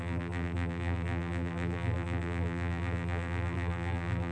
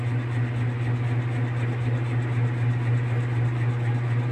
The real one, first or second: second